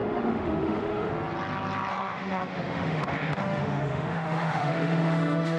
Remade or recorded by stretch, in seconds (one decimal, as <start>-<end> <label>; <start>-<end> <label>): 0.0-1.1 remade; 1.1-1.9 recorded; 1.9-5.6 remade